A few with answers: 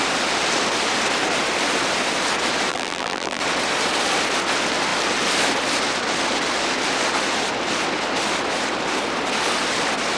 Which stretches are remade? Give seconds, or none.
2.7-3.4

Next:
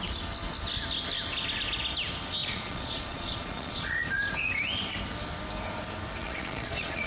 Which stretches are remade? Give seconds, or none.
2.4-4.2; 6.2-7.1

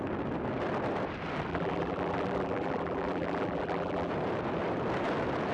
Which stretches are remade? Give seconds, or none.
1.5-4.1

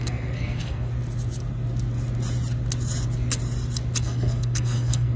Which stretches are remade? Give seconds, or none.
0.0-0.9; 4.0-5.2

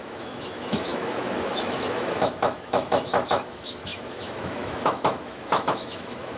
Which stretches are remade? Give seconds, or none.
0.0-6.4

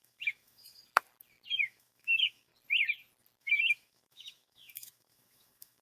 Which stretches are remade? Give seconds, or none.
0.0-0.8; 1.6-2.5; 3.4-5.8

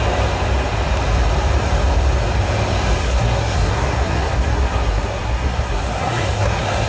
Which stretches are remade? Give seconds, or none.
3.0-6.9